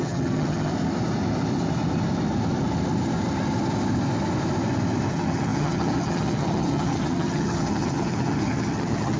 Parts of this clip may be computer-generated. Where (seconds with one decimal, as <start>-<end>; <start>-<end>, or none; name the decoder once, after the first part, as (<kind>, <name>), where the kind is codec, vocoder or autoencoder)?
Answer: 0.0-0.7 (vocoder, HiFi-GAN); 5.1-9.2